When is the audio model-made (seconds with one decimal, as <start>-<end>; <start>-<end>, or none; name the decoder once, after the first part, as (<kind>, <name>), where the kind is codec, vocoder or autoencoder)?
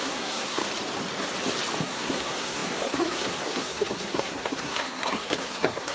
0.0-0.6 (codec, SNAC); 1.8-5.9